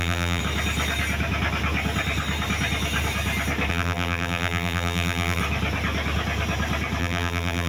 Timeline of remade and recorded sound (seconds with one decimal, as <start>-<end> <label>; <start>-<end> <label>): 0.0-0.4 remade; 0.4-3.7 recorded; 3.7-5.4 remade; 5.4-7.0 recorded; 7.0-7.7 remade